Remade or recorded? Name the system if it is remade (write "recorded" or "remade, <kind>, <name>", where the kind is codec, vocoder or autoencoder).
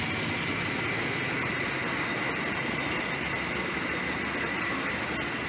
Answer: recorded